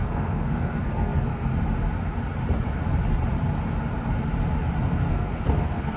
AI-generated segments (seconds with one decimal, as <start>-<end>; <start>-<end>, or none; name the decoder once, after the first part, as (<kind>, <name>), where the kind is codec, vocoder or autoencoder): 0.0-1.5 (codec, SNAC); 5.1-6.0